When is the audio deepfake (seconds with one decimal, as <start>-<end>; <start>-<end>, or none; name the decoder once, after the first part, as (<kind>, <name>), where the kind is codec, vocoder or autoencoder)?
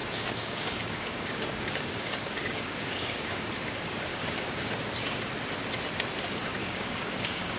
0.0-3.5 (codec, DAC); 4.1-4.7; 6.6-7.6